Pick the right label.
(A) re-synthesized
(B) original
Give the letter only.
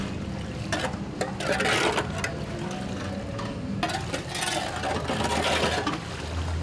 B